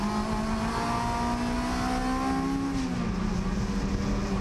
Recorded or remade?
recorded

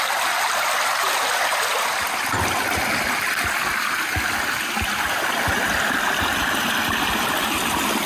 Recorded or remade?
recorded